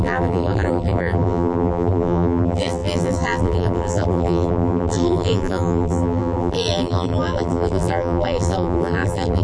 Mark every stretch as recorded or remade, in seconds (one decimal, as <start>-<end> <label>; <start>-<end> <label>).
0.0-9.4 remade